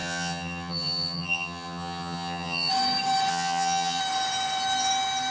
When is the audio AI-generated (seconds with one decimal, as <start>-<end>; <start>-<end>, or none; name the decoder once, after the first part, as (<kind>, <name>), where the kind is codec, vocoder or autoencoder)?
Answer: 0.0-2.7 (vocoder, HiFi-GAN); 3.3-4.0